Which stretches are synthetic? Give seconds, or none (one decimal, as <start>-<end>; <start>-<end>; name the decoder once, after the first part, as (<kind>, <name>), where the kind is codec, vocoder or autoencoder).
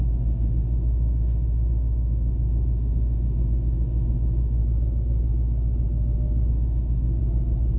0.0-4.6 (autoencoder, DAC-VAE); 6.5-7.2